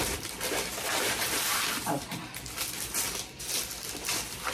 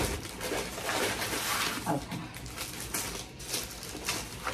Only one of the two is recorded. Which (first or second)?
second